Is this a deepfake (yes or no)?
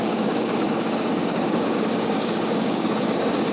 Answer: yes